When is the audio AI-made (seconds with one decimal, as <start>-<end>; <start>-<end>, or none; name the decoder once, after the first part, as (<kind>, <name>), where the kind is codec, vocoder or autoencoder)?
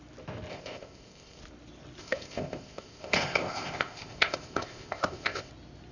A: 0.5-1.4 (codec, ZipCodec); 2.0-5.5